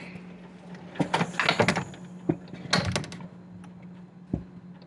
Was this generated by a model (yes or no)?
no